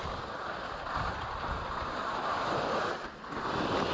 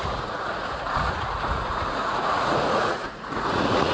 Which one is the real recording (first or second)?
first